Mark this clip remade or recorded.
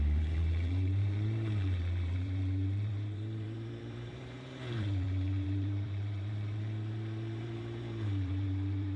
remade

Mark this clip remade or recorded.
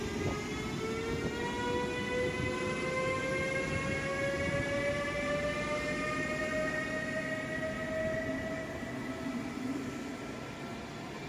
recorded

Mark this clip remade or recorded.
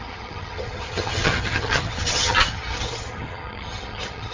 remade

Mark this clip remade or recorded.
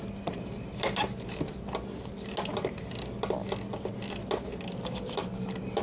recorded